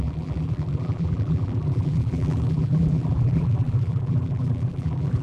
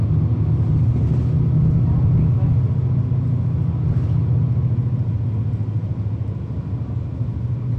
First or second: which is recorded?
second